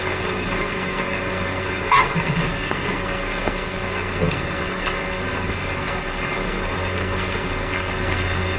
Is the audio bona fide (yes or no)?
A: no